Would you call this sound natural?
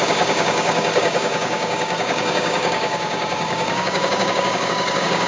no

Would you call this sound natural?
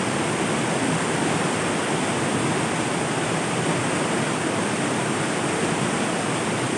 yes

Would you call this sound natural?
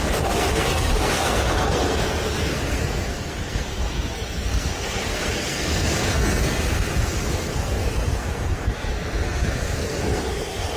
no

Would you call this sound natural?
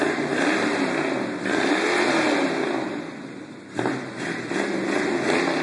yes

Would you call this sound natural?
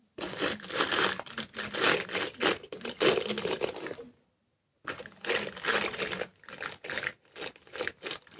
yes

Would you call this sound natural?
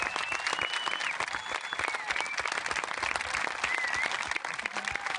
yes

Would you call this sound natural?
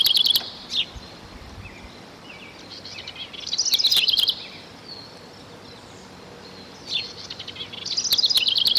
yes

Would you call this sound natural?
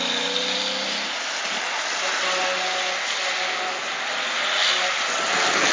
yes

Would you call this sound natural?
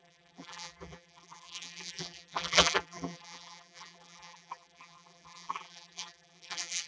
no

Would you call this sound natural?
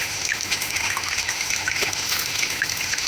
no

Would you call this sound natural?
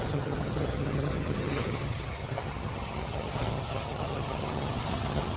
no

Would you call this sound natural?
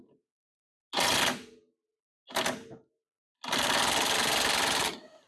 yes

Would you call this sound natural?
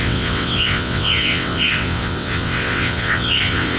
no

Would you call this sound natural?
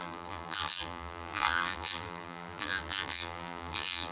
no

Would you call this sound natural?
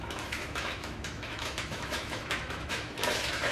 no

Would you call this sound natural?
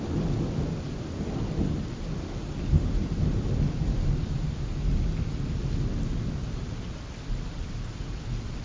yes